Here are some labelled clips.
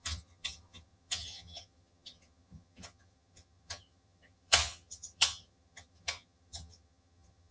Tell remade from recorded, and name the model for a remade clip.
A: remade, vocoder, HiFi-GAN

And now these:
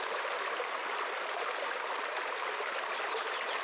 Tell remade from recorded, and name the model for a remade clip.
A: recorded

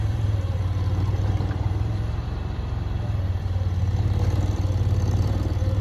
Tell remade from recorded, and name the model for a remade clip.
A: remade, vocoder, BigVGAN v2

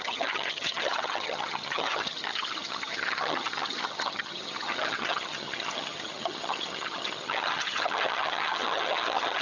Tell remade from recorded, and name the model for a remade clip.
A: remade, vocoder, HiFi-GAN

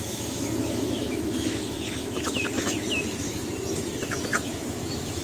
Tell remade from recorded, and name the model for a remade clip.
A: remade, autoencoder, DAC-VAE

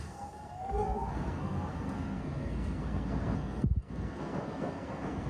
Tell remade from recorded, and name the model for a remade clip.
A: remade, codec, SNAC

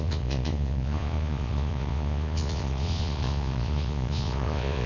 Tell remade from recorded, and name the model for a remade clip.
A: remade, vocoder, Vocos